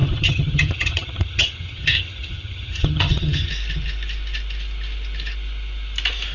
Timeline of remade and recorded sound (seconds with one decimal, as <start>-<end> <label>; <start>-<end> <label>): 0.0-3.5 remade; 3.5-6.3 recorded